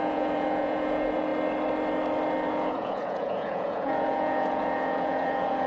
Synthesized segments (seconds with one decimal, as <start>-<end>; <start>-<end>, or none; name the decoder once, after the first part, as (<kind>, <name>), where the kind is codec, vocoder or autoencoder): 0.0-1.3 (vocoder, Vocos); 2.5-5.7